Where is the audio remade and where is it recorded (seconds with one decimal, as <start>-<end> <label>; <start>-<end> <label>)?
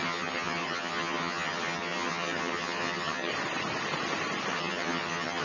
0.0-3.3 remade; 3.3-4.5 recorded; 4.5-5.4 remade